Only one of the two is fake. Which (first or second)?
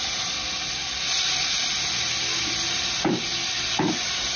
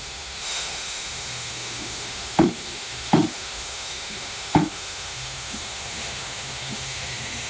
second